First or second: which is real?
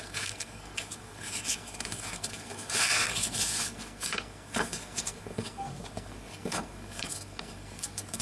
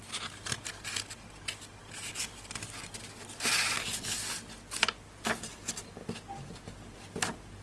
second